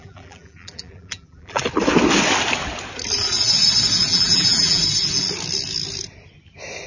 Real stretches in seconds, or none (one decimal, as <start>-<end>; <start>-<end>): 1.6-4.1; 4.8-6.9